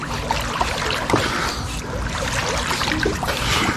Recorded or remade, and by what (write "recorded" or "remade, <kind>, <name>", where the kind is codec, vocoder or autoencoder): recorded